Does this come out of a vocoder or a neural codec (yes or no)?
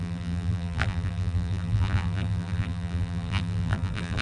yes